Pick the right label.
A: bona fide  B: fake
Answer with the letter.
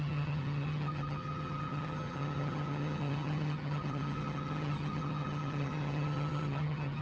B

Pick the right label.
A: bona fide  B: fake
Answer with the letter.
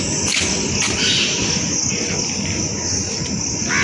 A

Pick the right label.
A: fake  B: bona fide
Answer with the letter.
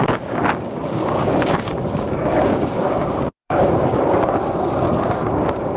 A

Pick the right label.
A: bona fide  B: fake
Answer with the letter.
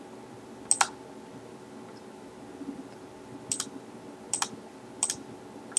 A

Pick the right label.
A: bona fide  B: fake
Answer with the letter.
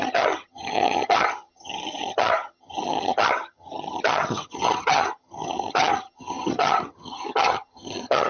B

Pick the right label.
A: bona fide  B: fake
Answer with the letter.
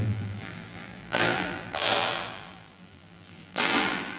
B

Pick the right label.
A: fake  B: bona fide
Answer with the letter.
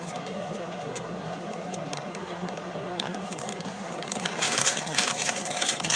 A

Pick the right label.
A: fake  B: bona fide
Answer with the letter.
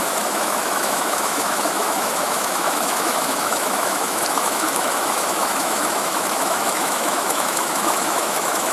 A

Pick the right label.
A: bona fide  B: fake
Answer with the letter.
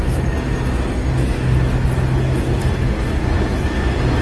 A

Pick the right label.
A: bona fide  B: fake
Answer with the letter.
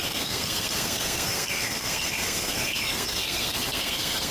B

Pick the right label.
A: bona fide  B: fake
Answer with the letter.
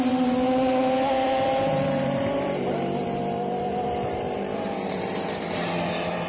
B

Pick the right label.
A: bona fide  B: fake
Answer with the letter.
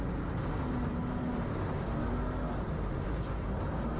A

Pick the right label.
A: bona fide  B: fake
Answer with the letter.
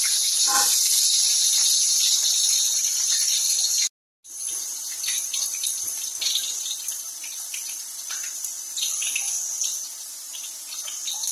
A